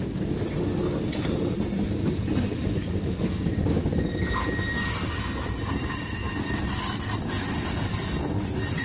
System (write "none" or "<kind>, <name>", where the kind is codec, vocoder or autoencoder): none